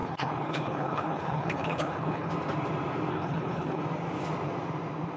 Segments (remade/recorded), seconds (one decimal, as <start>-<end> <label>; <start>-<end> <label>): 0.0-2.3 remade; 2.3-3.1 recorded; 3.1-3.8 remade; 3.8-5.2 recorded